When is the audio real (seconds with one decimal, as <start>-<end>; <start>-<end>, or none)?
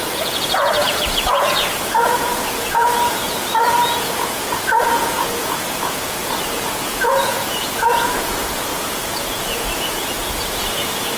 none